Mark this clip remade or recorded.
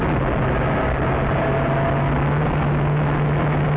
recorded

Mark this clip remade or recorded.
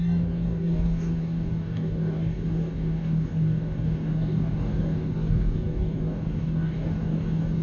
remade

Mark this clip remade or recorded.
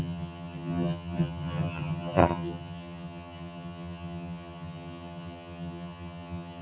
remade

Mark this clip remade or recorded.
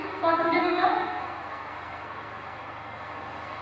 remade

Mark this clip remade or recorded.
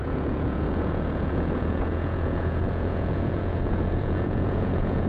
remade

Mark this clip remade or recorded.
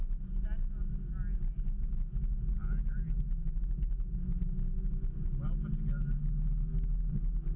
recorded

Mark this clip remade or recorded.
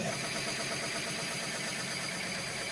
recorded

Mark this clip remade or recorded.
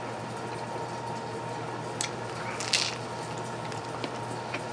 recorded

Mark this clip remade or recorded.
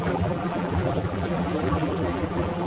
remade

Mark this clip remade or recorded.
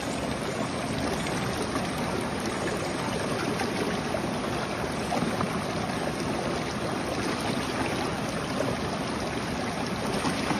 recorded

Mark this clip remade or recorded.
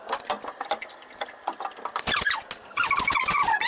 recorded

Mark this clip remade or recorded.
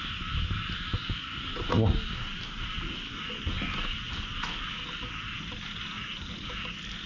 recorded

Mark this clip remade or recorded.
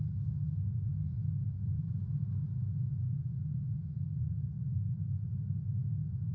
recorded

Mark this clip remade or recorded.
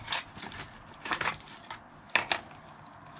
recorded